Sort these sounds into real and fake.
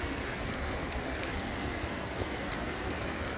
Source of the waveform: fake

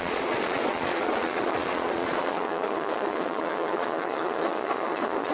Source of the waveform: fake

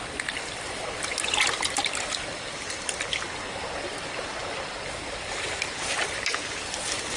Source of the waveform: real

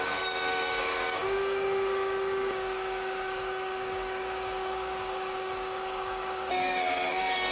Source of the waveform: fake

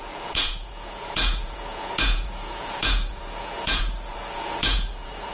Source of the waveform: fake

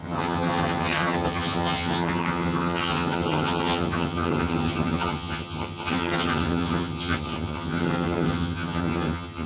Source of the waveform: fake